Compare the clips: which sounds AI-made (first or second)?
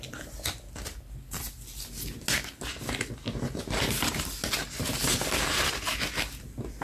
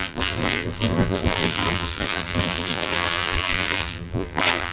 second